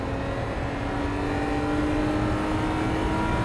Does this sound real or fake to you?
real